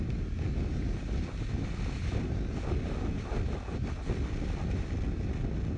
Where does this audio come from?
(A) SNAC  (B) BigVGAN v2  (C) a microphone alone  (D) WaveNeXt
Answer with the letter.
C